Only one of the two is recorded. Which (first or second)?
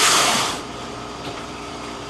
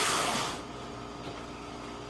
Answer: second